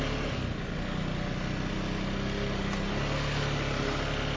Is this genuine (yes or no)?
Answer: yes